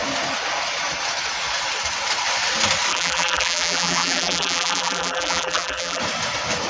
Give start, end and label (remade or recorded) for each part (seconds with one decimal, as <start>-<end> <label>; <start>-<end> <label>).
0.0-2.9 recorded; 2.9-6.0 remade; 6.0-6.7 recorded